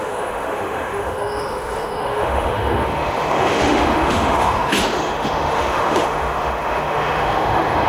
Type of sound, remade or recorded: remade